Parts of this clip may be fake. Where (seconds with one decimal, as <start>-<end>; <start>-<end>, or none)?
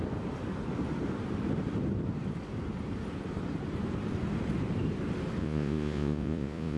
5.4-6.8